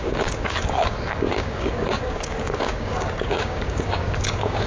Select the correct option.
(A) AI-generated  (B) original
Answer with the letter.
A